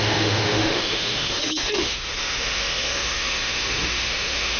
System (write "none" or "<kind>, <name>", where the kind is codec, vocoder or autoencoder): autoencoder, DAC-VAE